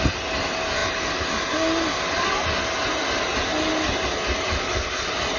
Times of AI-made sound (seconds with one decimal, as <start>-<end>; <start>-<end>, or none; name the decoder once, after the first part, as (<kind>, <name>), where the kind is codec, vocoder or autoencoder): none